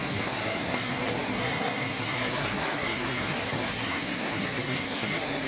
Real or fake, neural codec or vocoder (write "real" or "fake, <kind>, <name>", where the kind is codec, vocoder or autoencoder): fake, codec, SNAC